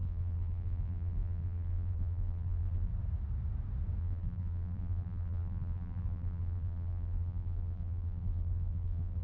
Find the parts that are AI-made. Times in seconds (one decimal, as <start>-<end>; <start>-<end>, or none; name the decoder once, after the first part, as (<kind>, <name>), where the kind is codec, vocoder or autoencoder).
0.0-2.9 (vocoder, BigVGAN v2); 4.0-9.2